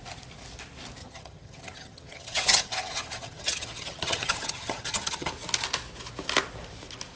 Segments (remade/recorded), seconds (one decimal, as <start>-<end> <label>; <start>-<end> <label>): 0.0-1.0 recorded; 1.0-5.3 remade; 5.3-7.2 recorded